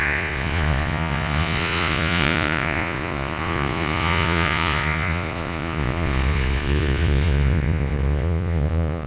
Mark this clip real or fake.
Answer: fake